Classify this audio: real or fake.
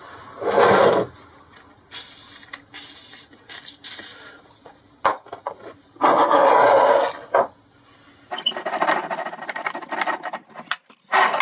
real